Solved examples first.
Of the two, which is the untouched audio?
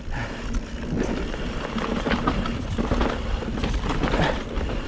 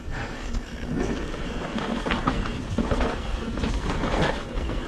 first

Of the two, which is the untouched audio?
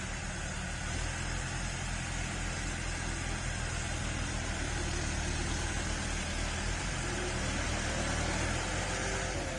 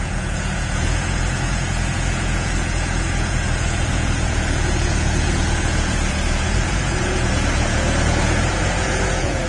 first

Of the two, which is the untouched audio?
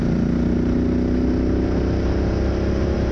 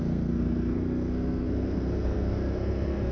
first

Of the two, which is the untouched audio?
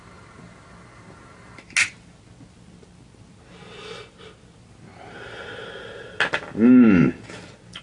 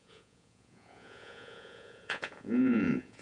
first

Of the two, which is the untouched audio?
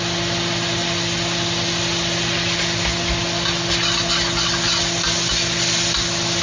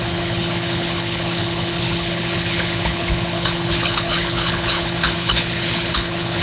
first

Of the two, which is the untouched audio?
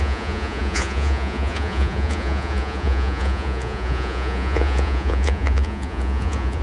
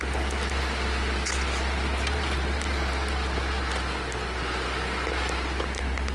second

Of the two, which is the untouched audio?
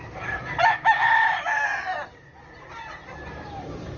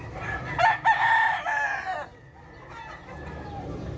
second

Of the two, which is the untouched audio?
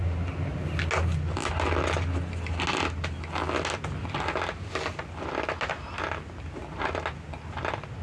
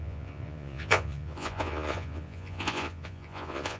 first